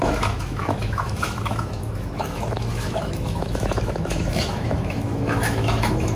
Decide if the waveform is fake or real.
fake